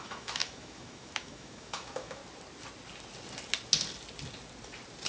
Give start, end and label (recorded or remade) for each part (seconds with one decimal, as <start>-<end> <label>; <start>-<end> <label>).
0.0-2.2 remade; 2.2-5.1 recorded